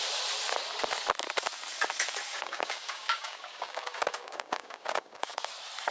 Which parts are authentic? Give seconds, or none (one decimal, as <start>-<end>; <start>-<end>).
0.0-2.3; 5.5-5.9